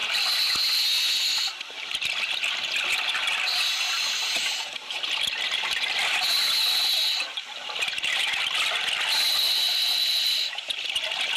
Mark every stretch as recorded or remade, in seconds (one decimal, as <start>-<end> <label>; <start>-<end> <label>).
0.0-11.4 recorded